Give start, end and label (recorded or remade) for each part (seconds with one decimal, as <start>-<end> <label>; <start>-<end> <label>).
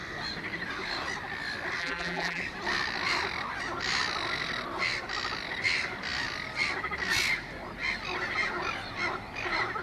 0.0-1.8 recorded; 1.8-2.4 remade; 2.4-9.8 recorded